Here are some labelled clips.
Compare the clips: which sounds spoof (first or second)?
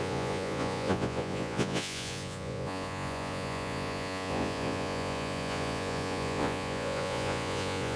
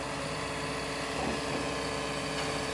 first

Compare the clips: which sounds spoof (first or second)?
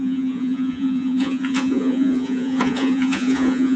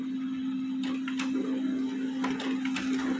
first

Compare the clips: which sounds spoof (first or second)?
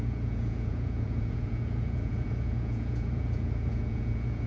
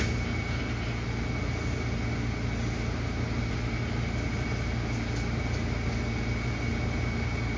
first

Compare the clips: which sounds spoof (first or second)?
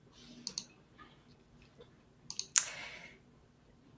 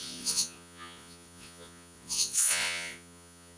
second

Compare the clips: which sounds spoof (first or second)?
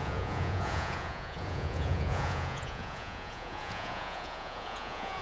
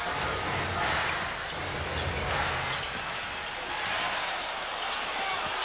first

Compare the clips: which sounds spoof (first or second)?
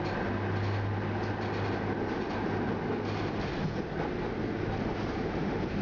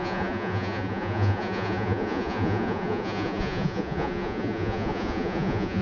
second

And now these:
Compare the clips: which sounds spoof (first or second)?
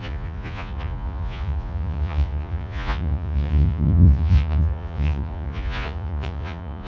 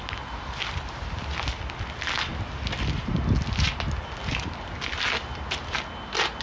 first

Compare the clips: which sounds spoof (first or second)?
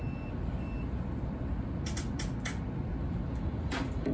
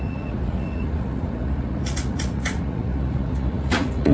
second